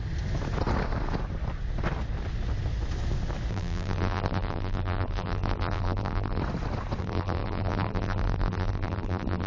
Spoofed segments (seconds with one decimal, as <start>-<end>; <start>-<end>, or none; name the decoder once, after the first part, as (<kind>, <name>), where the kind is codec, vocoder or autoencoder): 3.5-6.4 (vocoder, BigVGAN v2); 7.0-9.5